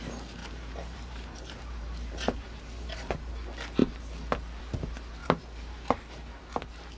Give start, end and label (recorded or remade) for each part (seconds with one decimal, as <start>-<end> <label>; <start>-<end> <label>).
0.0-0.4 recorded; 0.4-3.3 remade; 3.3-5.2 recorded; 5.2-6.4 remade; 6.4-7.0 recorded